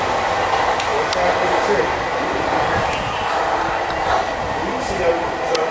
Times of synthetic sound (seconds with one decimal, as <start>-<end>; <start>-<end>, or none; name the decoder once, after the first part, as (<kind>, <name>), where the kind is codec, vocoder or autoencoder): none